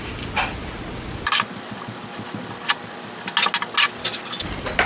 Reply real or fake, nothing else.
real